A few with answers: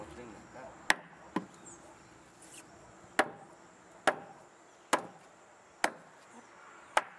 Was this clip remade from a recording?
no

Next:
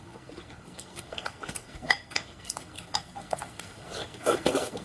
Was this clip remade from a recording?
yes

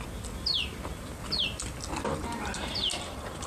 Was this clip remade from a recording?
no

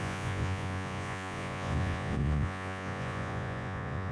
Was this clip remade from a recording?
yes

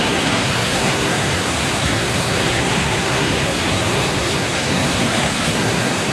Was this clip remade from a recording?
yes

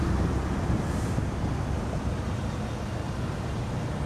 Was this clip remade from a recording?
no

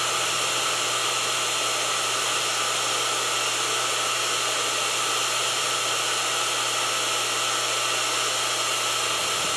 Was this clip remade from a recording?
no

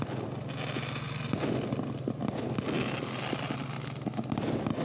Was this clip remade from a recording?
no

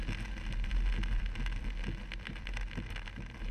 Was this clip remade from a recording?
no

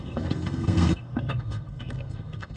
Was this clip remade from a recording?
yes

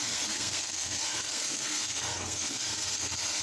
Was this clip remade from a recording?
yes